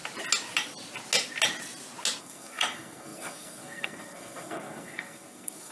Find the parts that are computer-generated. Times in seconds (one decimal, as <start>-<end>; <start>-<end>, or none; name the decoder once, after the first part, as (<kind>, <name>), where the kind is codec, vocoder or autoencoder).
2.2-5.7 (codec, SNAC)